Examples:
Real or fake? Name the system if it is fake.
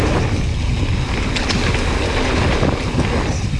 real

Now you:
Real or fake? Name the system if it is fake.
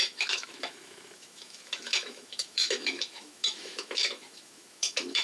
fake, autoencoder, DAC-VAE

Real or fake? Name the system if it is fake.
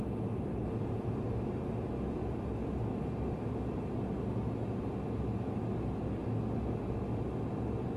real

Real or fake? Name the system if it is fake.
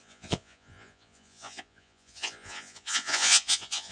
fake, vocoder, Vocos